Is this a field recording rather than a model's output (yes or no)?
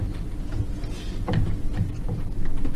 yes